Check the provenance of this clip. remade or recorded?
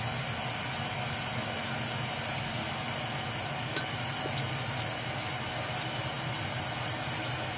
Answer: recorded